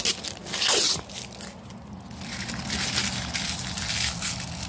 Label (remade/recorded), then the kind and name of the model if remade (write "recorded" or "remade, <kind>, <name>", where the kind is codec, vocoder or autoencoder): recorded